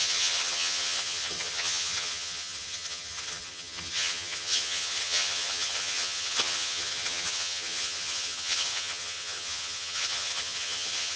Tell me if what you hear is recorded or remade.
remade